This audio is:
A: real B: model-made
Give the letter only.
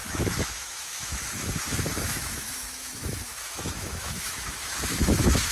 B